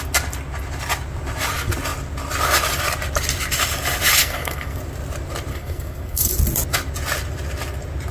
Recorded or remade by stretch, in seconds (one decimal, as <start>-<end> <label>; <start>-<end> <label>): 0.0-4.2 recorded; 4.2-4.8 remade; 4.8-5.5 recorded; 5.5-6.3 remade; 6.3-8.1 recorded